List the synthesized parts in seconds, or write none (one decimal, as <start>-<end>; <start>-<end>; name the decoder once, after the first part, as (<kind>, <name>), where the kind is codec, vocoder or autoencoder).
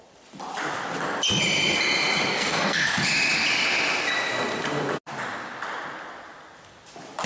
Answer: 2.3-2.9 (codec, SNAC)